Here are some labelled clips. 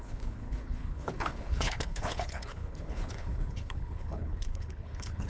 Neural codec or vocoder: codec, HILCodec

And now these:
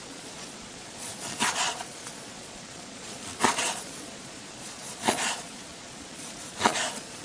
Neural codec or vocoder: vocoder, Vocos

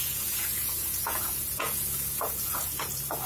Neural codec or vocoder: vocoder, Vocos